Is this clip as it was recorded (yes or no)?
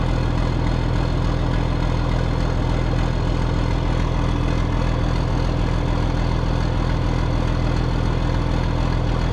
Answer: yes